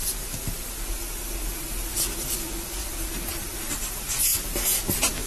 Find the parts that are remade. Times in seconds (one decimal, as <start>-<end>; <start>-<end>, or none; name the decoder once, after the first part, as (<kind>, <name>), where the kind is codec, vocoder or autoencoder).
1.0-1.9 (vocoder, BigVGAN v2)